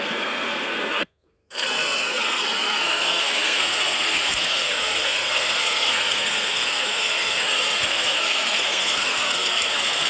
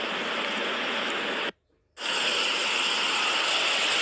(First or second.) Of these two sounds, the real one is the second